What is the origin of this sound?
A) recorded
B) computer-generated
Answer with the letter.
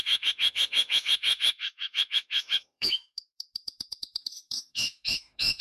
B